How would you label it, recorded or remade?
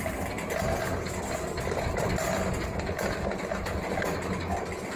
recorded